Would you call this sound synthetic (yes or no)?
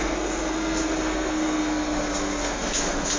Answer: yes